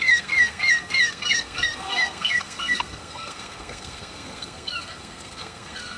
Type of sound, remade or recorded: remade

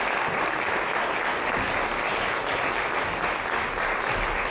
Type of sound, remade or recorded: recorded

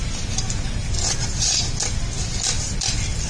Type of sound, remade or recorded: recorded